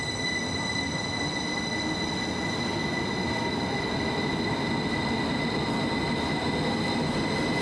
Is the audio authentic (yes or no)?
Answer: yes